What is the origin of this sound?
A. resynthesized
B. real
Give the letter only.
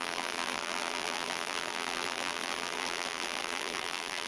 A